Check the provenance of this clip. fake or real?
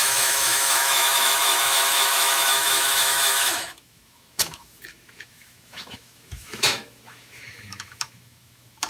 fake